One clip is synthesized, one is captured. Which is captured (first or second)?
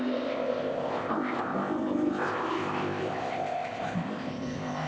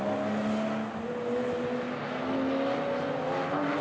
second